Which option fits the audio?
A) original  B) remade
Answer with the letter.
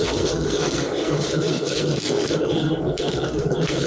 B